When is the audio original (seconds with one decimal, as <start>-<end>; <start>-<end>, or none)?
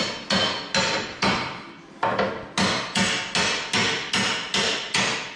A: 0.0-5.4